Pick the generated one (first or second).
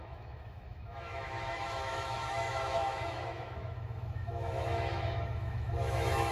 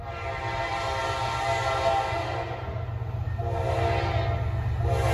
first